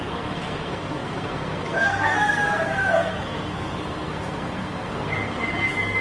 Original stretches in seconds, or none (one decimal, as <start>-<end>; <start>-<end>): none